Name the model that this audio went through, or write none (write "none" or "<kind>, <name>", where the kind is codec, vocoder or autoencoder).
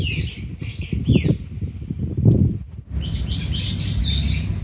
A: none